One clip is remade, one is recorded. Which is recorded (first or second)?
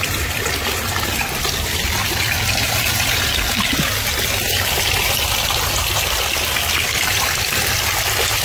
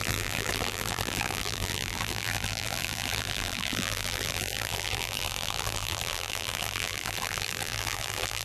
first